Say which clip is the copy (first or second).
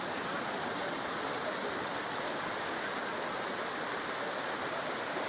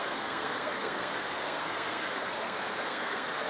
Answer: second